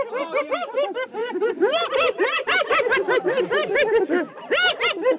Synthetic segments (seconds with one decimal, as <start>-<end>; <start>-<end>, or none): 1.2-3.2